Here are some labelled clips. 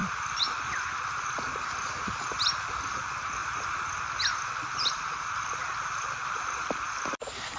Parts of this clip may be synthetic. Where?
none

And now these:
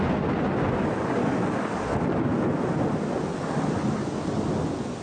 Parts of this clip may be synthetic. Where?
1.2-1.8 (codec, DAC)

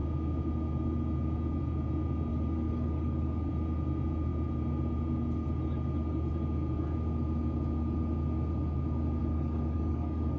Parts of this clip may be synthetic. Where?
2.3-3.5 (codec, DAC); 9.2-10.4

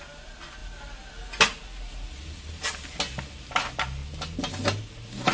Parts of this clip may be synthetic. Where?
none

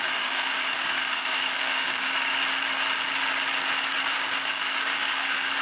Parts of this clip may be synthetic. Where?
0.0-2.4 (codec, DAC); 4.1-5.6